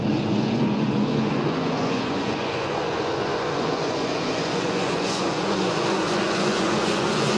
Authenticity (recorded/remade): remade